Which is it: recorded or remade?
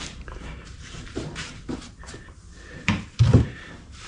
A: remade